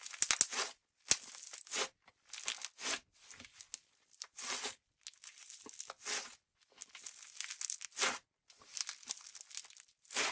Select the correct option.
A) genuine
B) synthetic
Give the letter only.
A